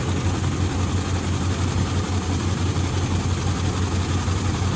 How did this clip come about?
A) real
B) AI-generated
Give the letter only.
A